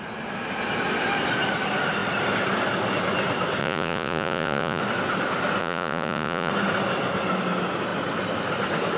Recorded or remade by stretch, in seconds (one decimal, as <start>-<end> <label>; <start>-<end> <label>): 0.0-3.6 recorded; 3.6-4.8 remade; 4.8-5.6 recorded; 5.6-6.5 remade; 6.5-9.0 recorded